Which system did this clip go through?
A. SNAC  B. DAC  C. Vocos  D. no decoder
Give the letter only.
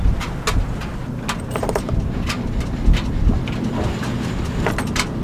D